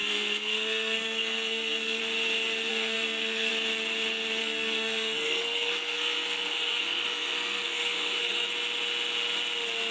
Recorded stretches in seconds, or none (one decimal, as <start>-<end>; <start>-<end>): 2.0-2.7; 3.5-4.4; 8.5-9.9